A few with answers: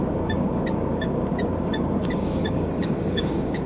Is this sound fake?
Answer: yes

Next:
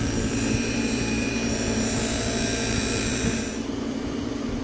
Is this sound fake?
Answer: yes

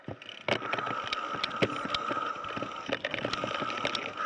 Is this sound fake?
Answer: no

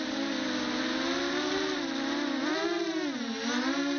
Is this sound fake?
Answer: no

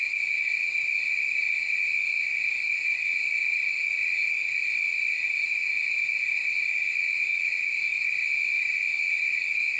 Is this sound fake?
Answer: yes